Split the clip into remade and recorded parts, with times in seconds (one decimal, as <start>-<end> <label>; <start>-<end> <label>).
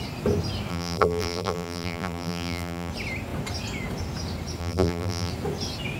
0.0-0.7 recorded; 0.7-2.9 remade; 2.9-4.6 recorded; 4.6-5.3 remade; 5.3-6.0 recorded